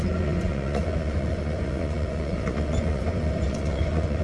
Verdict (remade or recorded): remade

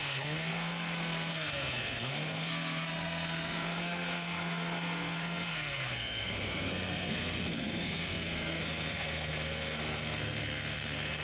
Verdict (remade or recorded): remade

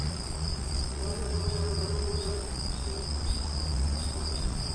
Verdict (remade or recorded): remade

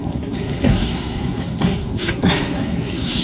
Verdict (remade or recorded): remade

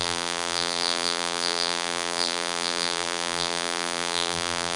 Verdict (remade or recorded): remade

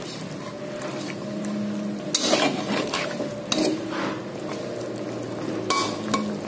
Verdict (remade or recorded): recorded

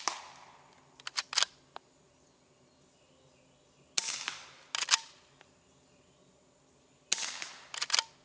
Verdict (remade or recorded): recorded